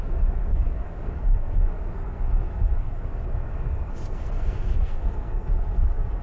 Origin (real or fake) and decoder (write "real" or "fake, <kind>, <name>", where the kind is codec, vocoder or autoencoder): fake, codec, SNAC